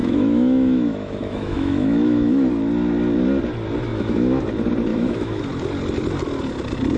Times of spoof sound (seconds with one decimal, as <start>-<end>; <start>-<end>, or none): 0.0-2.5; 3.9-4.4; 4.9-5.4